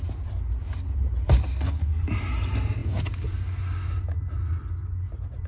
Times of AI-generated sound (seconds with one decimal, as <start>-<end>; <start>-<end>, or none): 1.5-2.1